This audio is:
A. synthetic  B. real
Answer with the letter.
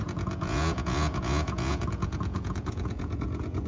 A